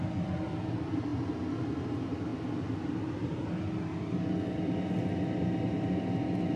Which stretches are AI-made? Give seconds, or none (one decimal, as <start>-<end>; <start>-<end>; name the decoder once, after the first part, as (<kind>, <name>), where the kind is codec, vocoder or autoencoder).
none